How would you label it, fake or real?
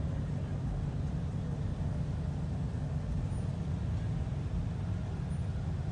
real